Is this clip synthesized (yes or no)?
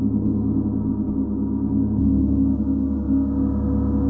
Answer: no